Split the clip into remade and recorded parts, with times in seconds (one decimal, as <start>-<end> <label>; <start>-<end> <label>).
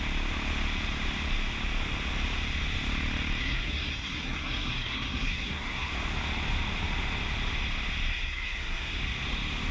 0.0-3.4 recorded; 3.4-5.9 remade; 5.9-8.1 recorded; 8.1-9.0 remade; 9.0-9.7 recorded